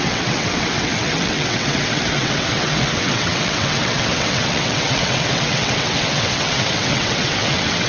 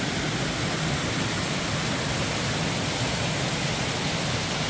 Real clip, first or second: second